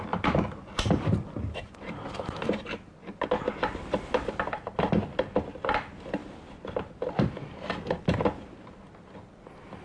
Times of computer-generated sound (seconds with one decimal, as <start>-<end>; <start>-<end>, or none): none